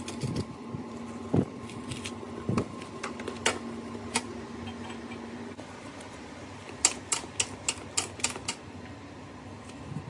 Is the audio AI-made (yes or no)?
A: no